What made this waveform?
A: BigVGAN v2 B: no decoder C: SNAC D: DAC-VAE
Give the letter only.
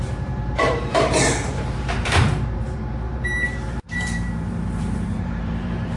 A